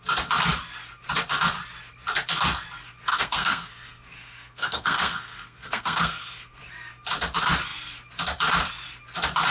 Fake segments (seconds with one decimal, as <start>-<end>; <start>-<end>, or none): 3.1-6.6